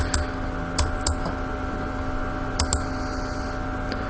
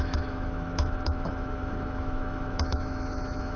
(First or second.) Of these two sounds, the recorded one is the first